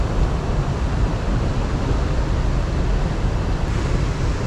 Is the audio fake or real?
real